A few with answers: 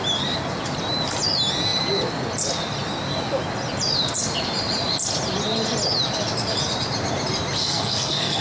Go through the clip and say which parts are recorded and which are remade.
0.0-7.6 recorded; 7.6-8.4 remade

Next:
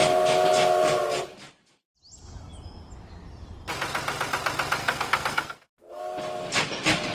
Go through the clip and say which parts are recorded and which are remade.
0.0-4.8 recorded; 4.8-6.0 remade; 6.0-7.1 recorded

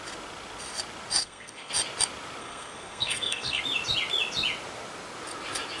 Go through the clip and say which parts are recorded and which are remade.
0.0-1.2 recorded; 1.2-1.7 remade; 1.7-2.4 recorded; 2.4-3.6 remade; 3.6-5.8 recorded

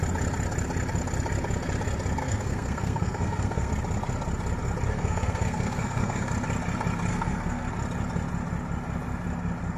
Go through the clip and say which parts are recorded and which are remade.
0.0-2.2 recorded; 2.2-3.7 remade; 3.7-4.9 recorded; 4.9-6.3 remade; 6.3-7.1 recorded; 7.1-7.7 remade; 7.7-9.8 recorded